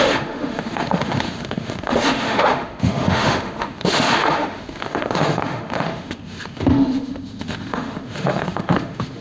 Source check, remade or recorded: remade